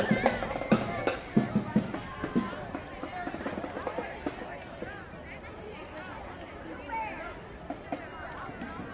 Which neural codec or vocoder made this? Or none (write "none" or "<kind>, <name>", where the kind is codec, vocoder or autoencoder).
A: none